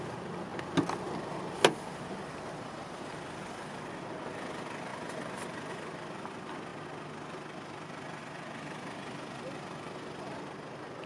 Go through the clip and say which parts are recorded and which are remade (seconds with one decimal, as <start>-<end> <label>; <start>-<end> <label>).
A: 0.0-11.1 recorded